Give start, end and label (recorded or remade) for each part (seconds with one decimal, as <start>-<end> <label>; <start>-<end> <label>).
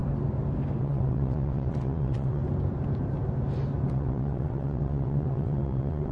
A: 0.0-0.8 recorded; 0.8-2.4 remade; 2.4-3.9 recorded; 3.9-6.1 remade